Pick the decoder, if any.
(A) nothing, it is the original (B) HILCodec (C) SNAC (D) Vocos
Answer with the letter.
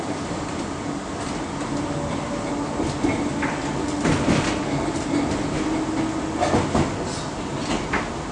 A